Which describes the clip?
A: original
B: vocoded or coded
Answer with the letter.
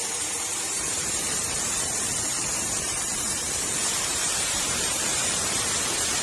B